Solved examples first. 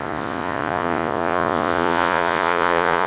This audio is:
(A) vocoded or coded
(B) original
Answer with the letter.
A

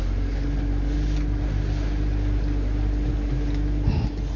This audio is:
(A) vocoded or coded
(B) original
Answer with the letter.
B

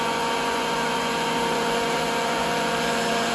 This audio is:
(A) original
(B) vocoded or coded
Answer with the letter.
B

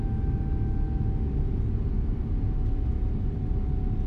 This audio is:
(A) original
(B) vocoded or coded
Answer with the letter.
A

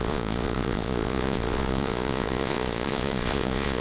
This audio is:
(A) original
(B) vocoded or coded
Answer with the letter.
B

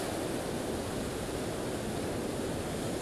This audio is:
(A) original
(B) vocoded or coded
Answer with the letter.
A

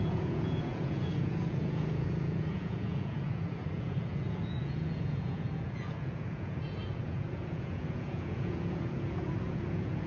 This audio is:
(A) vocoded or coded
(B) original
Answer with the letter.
A